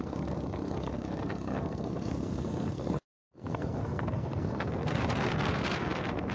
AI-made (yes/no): yes